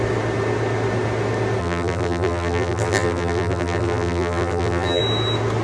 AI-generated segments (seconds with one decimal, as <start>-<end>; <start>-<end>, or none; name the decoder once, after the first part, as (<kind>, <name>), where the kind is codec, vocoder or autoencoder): 1.6-5.0 (vocoder, BigVGAN v2)